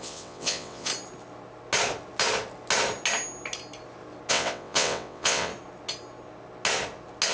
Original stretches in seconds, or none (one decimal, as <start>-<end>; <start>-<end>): 0.9-4.3; 5.5-7.3